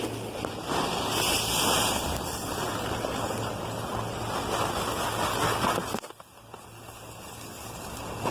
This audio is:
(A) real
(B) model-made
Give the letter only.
A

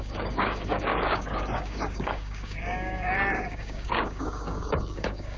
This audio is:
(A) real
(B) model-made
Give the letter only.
B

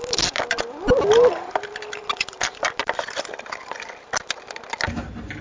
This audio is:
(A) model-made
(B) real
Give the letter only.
B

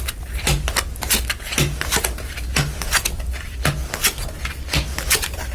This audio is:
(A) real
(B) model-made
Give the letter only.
A